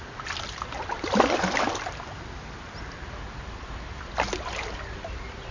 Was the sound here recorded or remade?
recorded